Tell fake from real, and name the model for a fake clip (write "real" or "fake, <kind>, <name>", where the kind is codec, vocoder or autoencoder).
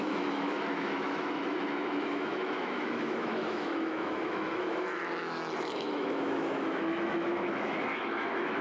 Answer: fake, autoencoder, DAC-VAE